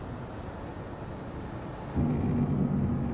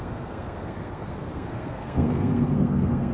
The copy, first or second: second